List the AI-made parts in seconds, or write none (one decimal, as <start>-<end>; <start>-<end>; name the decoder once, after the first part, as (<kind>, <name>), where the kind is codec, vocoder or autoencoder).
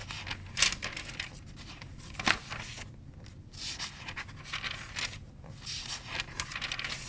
none